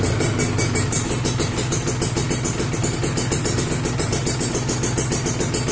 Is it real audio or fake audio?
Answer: real